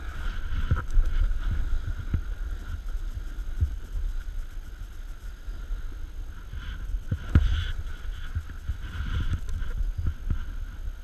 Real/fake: real